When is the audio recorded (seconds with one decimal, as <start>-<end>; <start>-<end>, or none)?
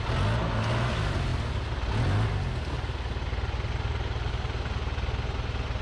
0.0-5.8